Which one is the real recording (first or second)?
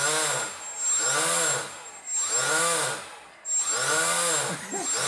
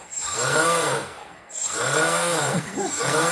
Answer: first